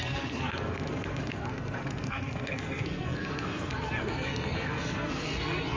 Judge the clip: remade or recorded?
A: remade